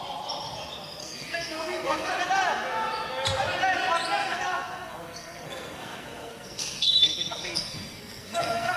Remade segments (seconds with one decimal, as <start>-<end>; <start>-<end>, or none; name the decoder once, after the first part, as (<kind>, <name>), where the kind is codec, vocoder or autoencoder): 1.0-2.1 (codec, SNAC); 4.2-8.8